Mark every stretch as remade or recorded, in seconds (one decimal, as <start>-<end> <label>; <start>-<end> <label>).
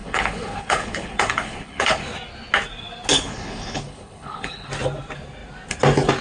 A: 0.0-2.0 remade; 2.0-3.1 recorded; 3.1-4.7 remade; 4.7-6.2 recorded